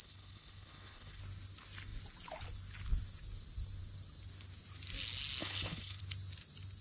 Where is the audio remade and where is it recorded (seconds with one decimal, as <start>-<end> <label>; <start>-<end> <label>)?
0.0-1.2 remade; 1.2-5.4 recorded; 5.4-6.0 remade; 6.0-6.8 recorded